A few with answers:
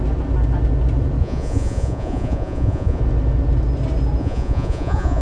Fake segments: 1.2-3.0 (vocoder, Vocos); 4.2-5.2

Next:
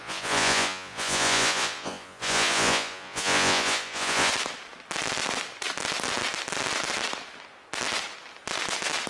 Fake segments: 0.0-4.3 (vocoder, Vocos)